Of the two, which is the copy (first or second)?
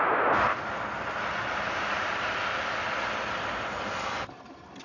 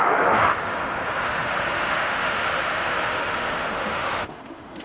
second